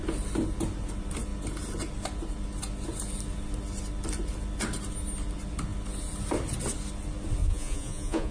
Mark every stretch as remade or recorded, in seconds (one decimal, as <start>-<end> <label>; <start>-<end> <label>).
0.0-7.4 recorded; 7.4-8.3 remade